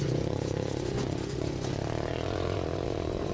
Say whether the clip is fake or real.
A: fake